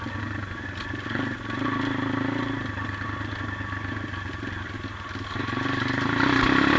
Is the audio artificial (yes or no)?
no